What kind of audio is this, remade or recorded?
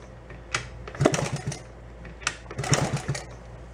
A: recorded